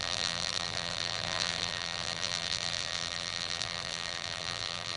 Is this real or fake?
fake